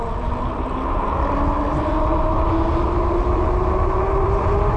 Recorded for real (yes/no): yes